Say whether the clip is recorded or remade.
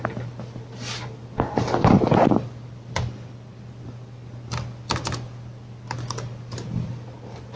recorded